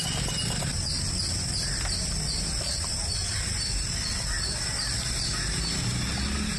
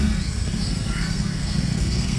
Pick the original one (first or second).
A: first